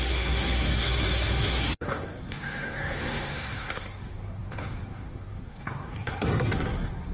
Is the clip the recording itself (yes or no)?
no